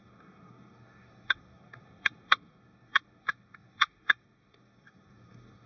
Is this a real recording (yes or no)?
no